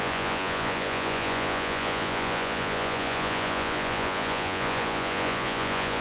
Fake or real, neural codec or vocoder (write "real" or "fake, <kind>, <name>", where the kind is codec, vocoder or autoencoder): fake, vocoder, Vocos